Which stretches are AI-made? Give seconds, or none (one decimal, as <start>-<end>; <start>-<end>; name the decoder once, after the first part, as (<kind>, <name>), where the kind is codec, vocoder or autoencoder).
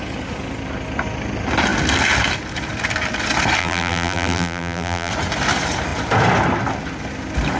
3.6-5.1 (vocoder, BigVGAN v2)